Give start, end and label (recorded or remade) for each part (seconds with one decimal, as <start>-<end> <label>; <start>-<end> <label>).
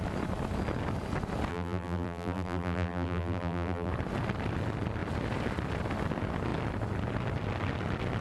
0.0-1.5 recorded; 1.5-3.9 remade; 3.9-8.2 recorded